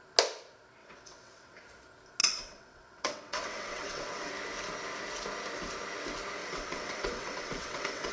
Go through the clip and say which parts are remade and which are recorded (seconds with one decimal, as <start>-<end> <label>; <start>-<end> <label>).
0.0-0.8 recorded; 0.8-1.6 remade; 1.6-2.2 recorded; 2.2-4.3 remade; 4.3-6.4 recorded; 6.4-8.1 remade